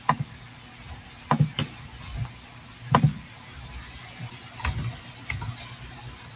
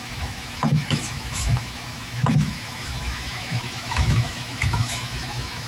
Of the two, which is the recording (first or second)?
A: first